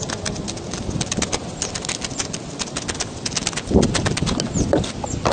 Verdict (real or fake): real